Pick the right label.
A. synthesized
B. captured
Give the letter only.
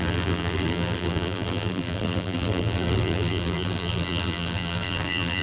A